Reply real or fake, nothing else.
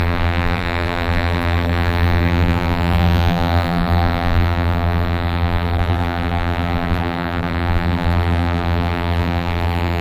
fake